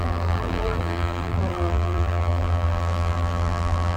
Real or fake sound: fake